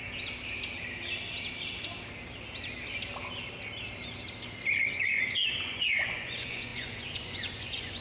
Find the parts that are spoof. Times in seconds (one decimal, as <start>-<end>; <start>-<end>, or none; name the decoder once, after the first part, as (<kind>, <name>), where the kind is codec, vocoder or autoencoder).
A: 4.8-8.0 (vocoder, Vocos)